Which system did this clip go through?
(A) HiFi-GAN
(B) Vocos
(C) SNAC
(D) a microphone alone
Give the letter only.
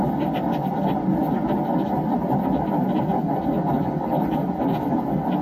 D